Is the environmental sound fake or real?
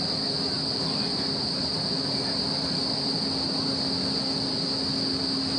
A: real